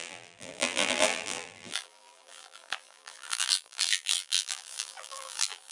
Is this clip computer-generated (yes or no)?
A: yes